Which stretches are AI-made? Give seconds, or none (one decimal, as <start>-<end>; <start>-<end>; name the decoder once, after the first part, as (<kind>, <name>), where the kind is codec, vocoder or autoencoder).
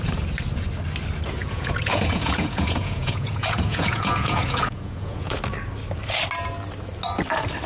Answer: 1.4-5.4 (vocoder, Vocos)